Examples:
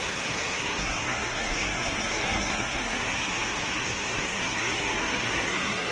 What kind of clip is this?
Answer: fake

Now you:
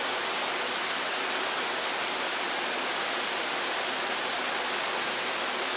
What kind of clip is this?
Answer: real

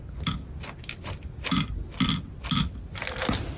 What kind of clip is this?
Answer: real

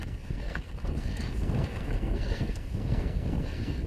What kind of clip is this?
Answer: fake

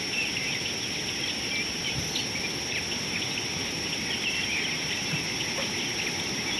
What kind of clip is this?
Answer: real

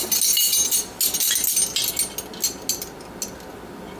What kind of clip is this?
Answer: real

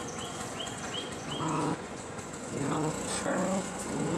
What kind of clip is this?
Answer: fake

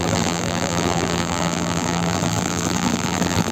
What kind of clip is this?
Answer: fake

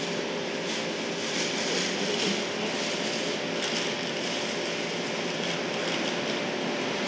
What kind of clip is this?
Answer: real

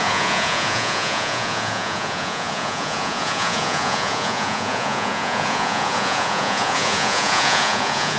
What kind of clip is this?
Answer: fake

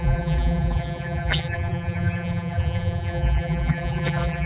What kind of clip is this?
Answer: fake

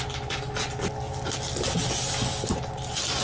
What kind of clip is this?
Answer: real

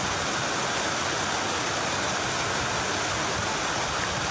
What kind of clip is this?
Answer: real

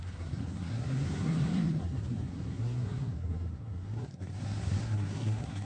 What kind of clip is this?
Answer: fake